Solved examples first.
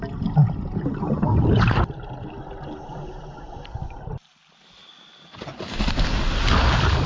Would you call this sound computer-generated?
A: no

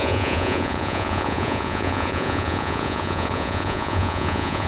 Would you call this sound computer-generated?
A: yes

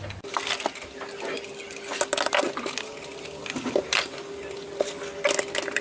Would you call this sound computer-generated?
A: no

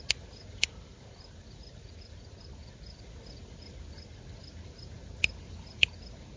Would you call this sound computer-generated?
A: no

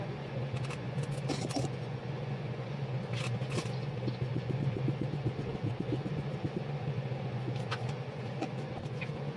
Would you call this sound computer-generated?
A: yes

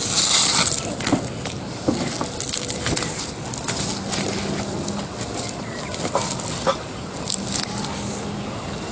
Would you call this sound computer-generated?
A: no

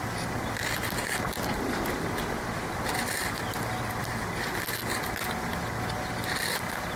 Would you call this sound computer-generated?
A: no